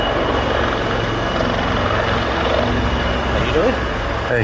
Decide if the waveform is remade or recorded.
recorded